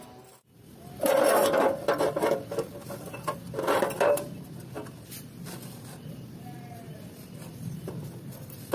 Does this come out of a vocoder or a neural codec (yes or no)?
no